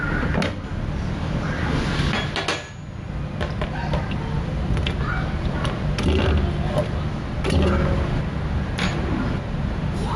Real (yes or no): yes